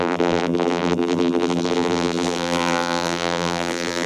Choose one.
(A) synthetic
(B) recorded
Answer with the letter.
A